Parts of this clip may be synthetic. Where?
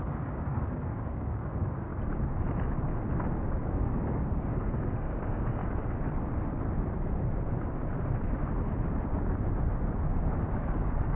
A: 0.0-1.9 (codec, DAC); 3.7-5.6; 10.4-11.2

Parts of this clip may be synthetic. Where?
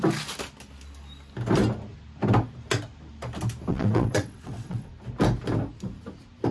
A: 3.7-4.9 (vocoder, WaveNeXt)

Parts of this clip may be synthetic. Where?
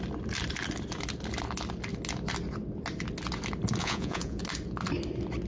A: 3.8-4.4 (vocoder, Vocos)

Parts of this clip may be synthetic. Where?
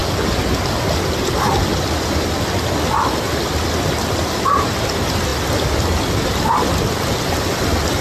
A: none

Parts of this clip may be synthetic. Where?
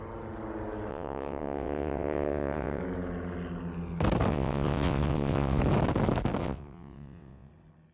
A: 0.9-2.8 (vocoder, WaveNeXt); 4.3-5.6; 6.4-7.5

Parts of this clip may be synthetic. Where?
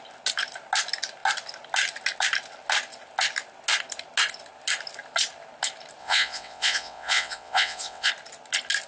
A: 6.0-8.1 (vocoder, WaveNeXt)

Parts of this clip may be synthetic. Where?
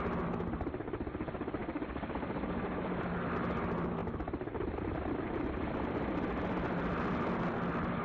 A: none